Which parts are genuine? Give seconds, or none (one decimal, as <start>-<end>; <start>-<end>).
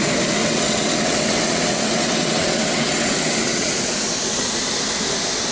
0.0-0.4; 3.7-5.5